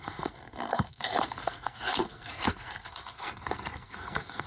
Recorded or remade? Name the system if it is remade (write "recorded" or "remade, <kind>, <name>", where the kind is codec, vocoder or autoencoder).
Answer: remade, codec, SNAC